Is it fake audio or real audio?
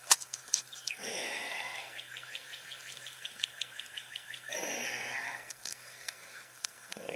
fake